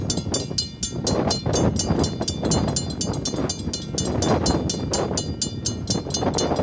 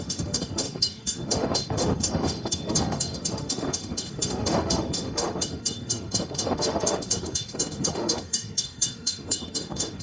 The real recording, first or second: first